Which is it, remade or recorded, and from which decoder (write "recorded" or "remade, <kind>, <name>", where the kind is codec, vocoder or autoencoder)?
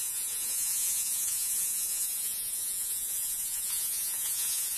remade, vocoder, Vocos